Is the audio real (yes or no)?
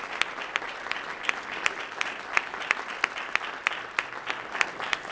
no